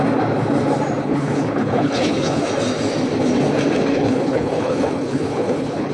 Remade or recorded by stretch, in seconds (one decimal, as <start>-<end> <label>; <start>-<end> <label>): 0.0-1.0 recorded; 1.0-2.4 remade; 2.4-3.9 recorded; 3.9-5.9 remade